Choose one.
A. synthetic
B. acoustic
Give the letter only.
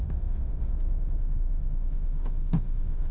A